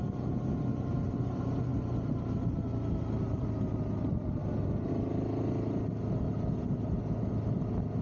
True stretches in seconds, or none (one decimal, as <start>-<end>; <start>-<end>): 0.0-8.0